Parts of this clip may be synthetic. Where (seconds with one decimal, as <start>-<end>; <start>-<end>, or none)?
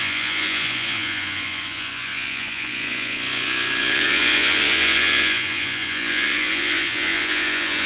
0.0-7.9